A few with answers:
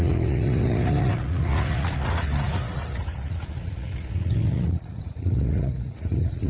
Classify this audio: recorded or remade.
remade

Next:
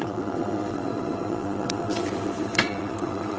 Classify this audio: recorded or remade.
remade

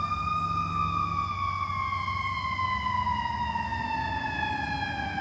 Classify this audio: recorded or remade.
recorded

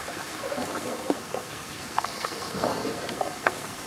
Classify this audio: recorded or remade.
remade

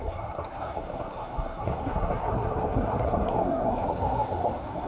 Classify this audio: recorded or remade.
remade